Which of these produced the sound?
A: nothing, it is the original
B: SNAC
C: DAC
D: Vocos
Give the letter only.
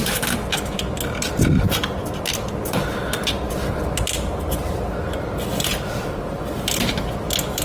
A